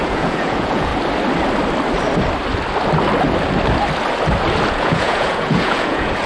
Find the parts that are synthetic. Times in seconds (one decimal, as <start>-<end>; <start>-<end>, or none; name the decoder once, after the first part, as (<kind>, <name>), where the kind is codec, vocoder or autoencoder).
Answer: 0.0-0.9 (vocoder, Vocos); 4.7-6.3